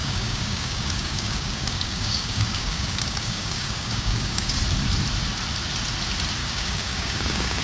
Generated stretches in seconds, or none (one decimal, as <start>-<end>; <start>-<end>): 0.0-4.6; 6.4-7.6